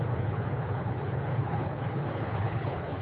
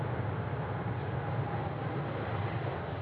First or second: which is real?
second